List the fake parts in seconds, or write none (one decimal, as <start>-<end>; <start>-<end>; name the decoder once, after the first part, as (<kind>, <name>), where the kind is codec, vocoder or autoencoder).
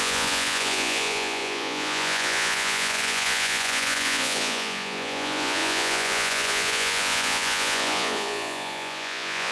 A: 0.0-9.5 (vocoder, Vocos)